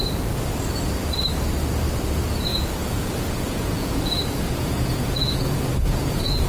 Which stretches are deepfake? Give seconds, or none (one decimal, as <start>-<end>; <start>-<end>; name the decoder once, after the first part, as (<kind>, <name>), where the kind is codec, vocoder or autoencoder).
2.5-6.5 (vocoder, Vocos)